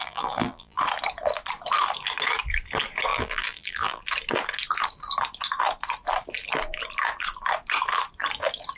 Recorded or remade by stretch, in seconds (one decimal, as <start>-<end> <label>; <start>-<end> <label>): 0.0-0.8 remade; 0.8-3.1 recorded; 3.1-4.0 remade; 4.0-8.8 recorded